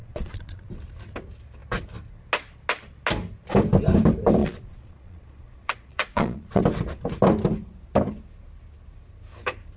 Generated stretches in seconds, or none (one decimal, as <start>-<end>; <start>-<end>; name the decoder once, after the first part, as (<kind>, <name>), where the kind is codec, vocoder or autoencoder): 0.0-0.7 (vocoder, Vocos); 4.4-6.6